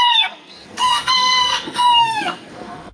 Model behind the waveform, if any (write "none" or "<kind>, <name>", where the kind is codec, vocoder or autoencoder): codec, SNAC